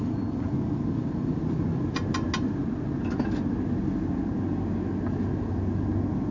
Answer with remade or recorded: recorded